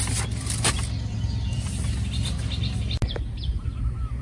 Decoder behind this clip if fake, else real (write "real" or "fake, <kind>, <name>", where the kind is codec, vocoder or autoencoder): real